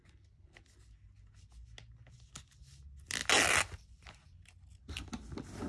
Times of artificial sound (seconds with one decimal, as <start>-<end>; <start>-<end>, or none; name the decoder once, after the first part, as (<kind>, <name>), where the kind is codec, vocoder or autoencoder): none